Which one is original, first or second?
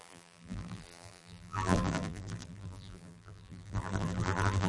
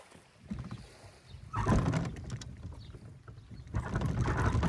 second